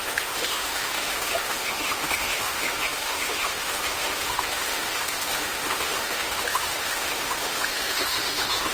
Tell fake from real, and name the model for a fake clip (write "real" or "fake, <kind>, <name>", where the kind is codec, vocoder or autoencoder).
fake, autoencoder, DAC-VAE